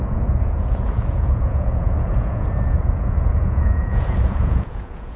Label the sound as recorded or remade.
remade